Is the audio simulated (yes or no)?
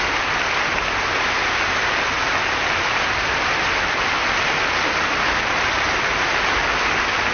no